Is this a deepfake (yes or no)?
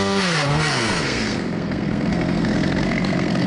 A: yes